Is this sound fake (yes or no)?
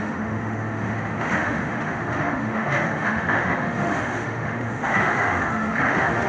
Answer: yes